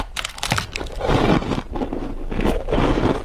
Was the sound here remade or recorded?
recorded